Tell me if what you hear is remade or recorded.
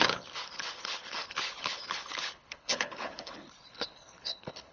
remade